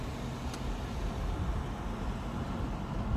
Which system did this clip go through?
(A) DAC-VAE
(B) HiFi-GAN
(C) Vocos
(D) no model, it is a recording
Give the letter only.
D